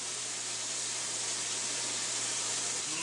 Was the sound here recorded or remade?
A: remade